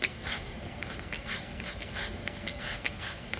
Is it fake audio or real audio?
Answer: fake